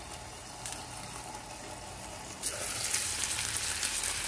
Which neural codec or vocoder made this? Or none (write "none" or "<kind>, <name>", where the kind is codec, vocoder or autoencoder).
none